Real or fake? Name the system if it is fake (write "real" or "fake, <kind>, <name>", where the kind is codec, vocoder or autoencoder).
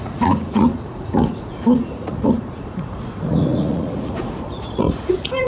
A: fake, vocoder, Vocos